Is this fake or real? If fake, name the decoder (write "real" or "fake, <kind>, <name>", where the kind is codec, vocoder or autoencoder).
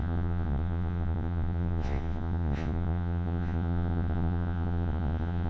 fake, vocoder, Vocos